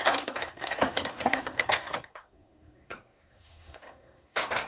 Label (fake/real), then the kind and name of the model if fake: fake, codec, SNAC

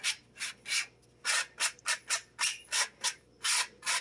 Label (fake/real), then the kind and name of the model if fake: real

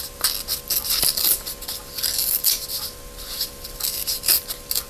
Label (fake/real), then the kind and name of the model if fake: real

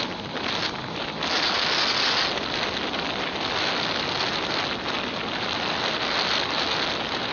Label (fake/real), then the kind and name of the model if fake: real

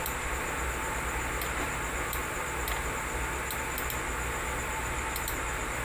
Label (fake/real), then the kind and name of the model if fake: real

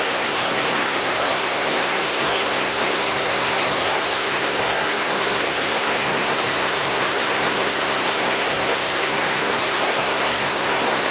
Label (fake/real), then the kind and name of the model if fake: fake, codec, SNAC